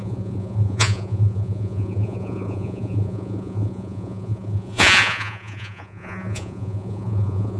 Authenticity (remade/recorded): remade